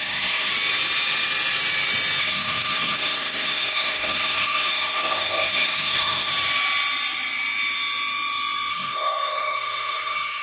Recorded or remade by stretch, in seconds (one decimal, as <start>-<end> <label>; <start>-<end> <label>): 0.0-0.5 remade; 0.5-2.2 recorded; 2.2-6.3 remade; 6.3-8.7 recorded; 8.7-10.4 remade